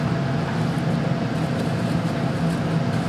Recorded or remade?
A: recorded